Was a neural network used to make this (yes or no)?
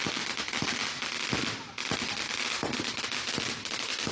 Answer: no